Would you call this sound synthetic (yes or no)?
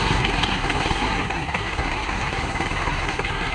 yes